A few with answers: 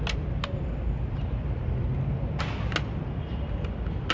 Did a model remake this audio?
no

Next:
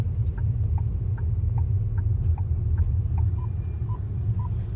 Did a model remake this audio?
no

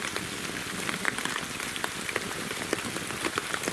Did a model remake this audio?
no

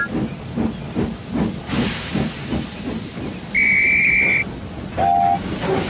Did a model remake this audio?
no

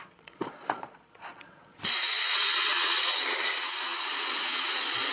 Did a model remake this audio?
yes